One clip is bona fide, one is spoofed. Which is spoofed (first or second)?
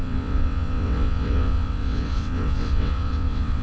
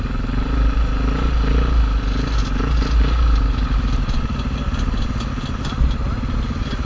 first